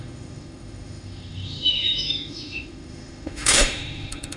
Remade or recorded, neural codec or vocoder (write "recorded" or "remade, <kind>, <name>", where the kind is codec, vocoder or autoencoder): remade, autoencoder, DAC-VAE